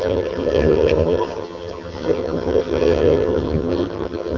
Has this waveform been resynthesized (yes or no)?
yes